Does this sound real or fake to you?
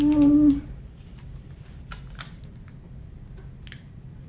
real